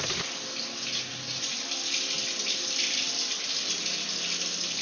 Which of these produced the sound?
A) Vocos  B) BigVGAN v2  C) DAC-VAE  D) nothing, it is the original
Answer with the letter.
D